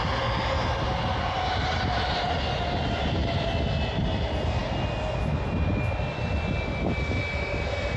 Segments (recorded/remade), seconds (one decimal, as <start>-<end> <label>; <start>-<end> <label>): 0.0-8.0 recorded